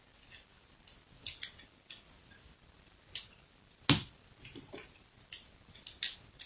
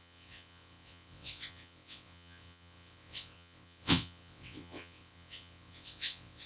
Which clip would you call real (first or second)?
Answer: first